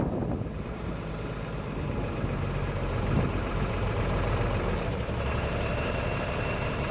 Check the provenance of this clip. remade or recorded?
remade